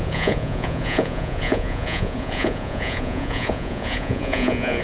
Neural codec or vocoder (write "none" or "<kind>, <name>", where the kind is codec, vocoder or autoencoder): vocoder, Vocos